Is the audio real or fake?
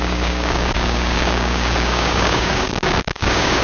fake